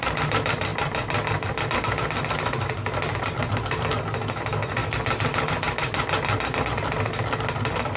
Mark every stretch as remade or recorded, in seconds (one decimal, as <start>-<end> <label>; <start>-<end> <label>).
0.0-8.0 recorded